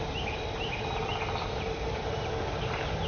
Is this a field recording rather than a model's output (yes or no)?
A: yes